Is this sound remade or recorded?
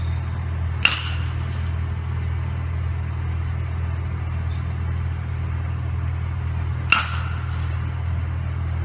recorded